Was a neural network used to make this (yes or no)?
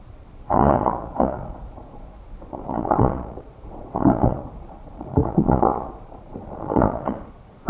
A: yes